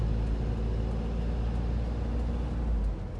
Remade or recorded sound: recorded